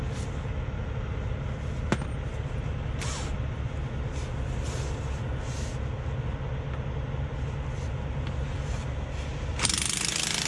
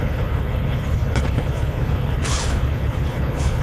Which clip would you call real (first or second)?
first